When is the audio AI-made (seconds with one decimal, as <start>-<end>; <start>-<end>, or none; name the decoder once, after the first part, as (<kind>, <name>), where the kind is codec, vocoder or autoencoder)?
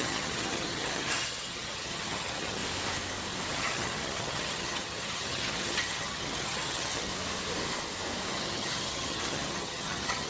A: 0.0-2.6 (vocoder, HiFi-GAN); 3.5-7.1; 8.3-10.3